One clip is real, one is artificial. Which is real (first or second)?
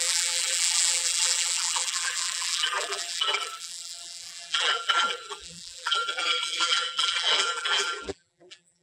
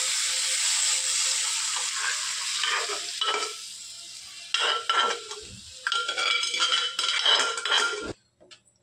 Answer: second